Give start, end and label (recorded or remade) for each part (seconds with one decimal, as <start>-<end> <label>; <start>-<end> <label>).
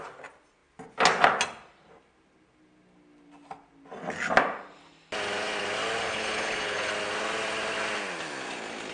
0.0-6.0 recorded; 6.0-6.9 remade; 6.9-8.9 recorded